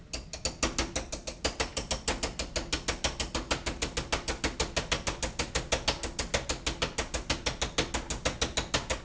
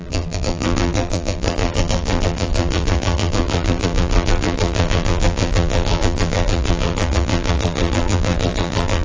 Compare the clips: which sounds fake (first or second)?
second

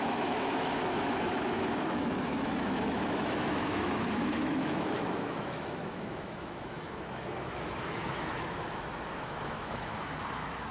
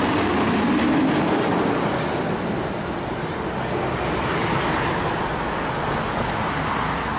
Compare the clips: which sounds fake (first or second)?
first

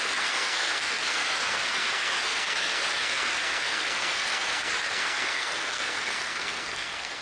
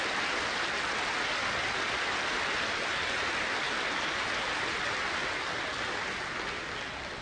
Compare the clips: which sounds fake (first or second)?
first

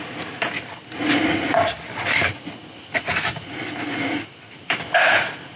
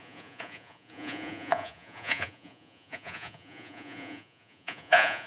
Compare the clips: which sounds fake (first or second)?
second